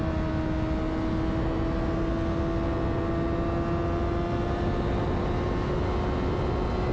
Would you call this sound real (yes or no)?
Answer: yes